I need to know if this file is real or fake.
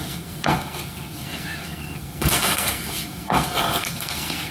fake